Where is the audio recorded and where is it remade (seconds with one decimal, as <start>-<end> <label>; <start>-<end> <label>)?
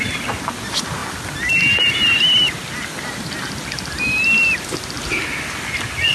0.0-6.1 recorded